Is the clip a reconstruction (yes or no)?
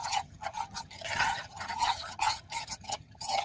yes